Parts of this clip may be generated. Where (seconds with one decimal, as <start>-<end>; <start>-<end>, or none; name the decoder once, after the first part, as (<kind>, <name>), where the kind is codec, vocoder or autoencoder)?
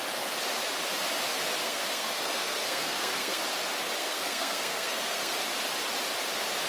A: 1.6-3.4 (codec, SNAC); 4.0-5.3